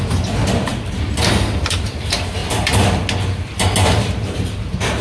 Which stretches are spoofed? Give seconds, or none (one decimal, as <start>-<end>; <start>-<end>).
0.0-0.7; 1.6-2.4; 4.0-5.0